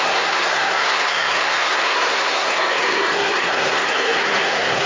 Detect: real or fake fake